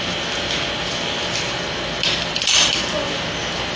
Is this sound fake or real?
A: real